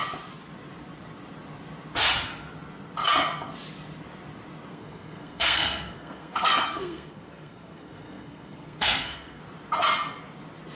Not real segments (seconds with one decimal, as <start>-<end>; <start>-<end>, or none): 4.7-9.4